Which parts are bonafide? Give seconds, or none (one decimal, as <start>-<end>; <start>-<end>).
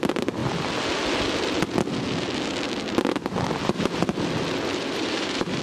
0.0-4.7